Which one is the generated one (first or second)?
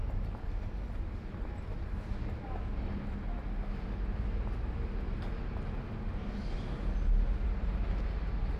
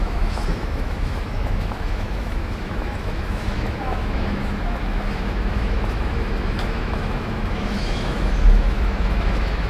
second